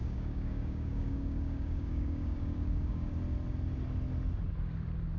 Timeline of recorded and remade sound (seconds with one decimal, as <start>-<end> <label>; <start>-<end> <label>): 0.0-3.1 remade; 3.1-5.2 recorded